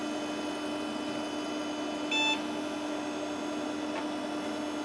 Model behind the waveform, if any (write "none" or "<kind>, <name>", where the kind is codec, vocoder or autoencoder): none